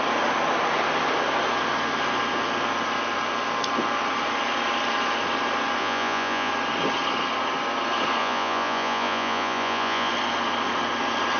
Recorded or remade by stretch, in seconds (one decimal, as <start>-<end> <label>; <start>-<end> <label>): 0.0-5.8 recorded; 5.8-6.5 remade; 6.5-8.2 recorded; 8.2-10.1 remade; 10.1-11.4 recorded